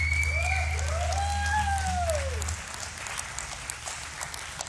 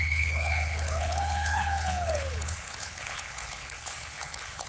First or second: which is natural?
first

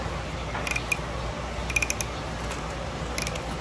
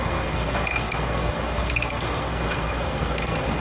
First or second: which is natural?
first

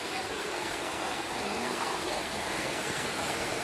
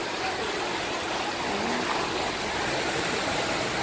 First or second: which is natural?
second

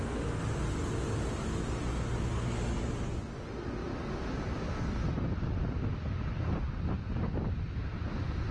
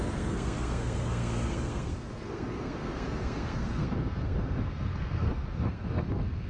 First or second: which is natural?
first